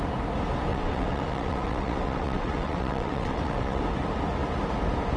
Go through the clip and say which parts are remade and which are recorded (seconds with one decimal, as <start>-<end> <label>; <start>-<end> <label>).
0.0-0.7 recorded; 0.7-3.8 remade; 3.8-5.2 recorded